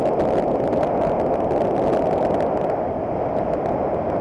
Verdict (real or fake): real